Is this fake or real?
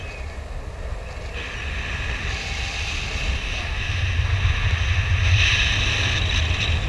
real